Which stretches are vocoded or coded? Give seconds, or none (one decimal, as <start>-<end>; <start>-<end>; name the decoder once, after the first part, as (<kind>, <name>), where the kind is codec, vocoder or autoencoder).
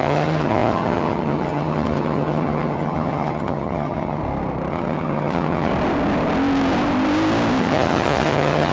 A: 0.0-4.2 (vocoder, HiFi-GAN); 4.7-5.7; 7.6-8.7